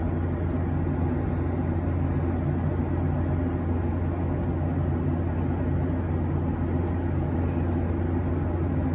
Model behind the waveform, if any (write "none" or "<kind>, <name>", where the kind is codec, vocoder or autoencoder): none